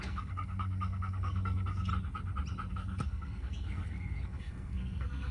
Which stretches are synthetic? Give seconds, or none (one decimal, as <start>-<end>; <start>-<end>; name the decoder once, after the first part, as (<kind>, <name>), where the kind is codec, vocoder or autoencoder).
0.0-1.9 (codec, SNAC); 2.7-5.3